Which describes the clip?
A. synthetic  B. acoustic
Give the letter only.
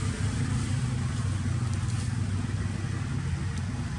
B